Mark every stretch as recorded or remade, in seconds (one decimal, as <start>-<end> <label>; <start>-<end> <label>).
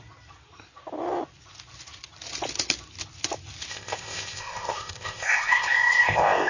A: 0.0-3.7 recorded; 3.7-6.5 remade